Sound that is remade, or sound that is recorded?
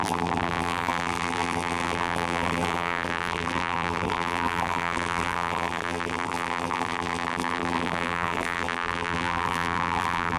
remade